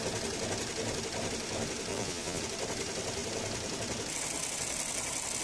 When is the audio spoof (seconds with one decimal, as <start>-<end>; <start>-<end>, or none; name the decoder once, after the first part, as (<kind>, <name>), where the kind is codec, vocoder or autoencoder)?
1.9-2.4 (vocoder, Vocos)